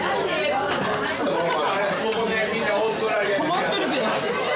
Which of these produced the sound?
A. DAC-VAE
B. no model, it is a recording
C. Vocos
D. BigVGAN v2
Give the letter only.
B